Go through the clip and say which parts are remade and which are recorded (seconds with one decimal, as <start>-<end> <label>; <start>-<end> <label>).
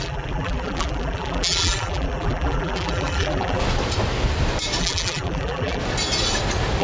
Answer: 0.0-3.6 remade; 3.6-4.8 recorded; 4.8-5.8 remade; 5.8-6.8 recorded